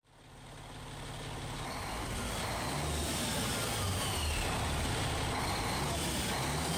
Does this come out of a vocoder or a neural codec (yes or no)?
no